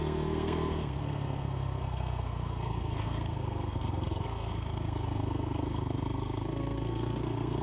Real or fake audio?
fake